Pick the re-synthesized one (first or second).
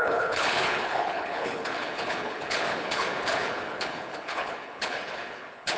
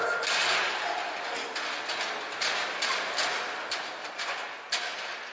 first